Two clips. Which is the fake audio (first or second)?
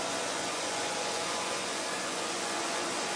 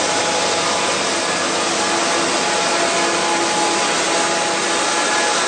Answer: first